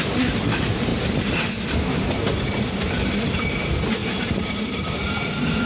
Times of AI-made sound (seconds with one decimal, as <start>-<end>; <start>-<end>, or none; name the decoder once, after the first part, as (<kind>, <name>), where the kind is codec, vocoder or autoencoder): 4.0-5.0 (vocoder, BigVGAN v2)